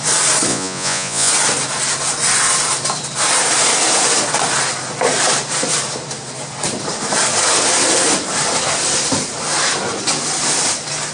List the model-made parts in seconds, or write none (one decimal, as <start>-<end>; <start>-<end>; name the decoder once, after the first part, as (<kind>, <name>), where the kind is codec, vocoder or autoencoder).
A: 0.5-1.3 (vocoder, Vocos)